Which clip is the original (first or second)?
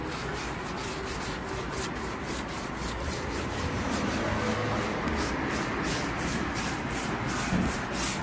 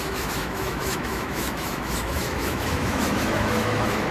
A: first